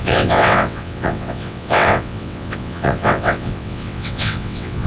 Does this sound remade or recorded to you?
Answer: remade